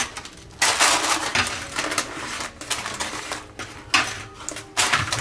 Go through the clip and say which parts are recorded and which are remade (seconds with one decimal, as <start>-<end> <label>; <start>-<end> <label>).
0.0-5.2 recorded

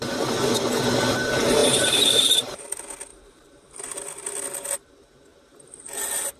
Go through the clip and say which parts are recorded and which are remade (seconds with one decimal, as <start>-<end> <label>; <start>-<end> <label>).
0.0-1.6 recorded; 1.6-2.6 remade; 2.6-3.1 recorded; 3.1-4.0 remade; 4.0-5.3 recorded; 5.3-6.4 remade

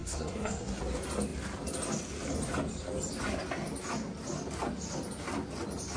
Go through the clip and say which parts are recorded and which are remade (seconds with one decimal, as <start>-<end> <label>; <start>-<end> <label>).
0.0-0.8 remade; 0.8-6.0 recorded

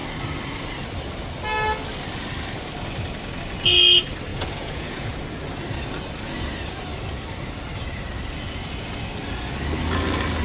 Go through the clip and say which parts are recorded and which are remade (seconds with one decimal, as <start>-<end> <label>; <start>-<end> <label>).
0.0-4.3 recorded; 4.3-5.1 remade; 5.1-10.4 recorded

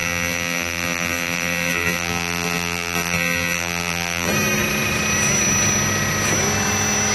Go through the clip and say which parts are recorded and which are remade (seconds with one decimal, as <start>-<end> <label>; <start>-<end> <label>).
0.0-4.3 remade; 4.3-7.1 recorded

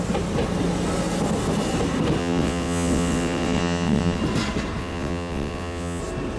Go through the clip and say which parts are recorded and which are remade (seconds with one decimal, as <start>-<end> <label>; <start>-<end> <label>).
0.0-2.2 recorded; 2.2-4.2 remade; 4.2-4.8 recorded; 4.8-6.0 remade; 6.0-6.4 recorded

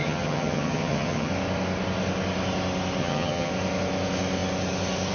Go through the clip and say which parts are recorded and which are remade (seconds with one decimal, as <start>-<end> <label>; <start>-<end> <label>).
0.0-1.3 remade; 1.3-3.0 recorded; 3.0-3.5 remade; 3.5-5.1 recorded

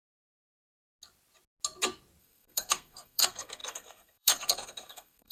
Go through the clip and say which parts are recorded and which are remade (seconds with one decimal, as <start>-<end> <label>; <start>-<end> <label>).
0.0-2.2 recorded; 2.2-5.3 remade